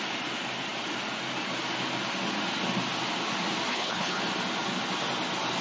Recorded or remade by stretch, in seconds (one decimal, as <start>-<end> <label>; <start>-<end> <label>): 0.0-3.7 recorded; 3.7-4.2 remade; 4.2-5.6 recorded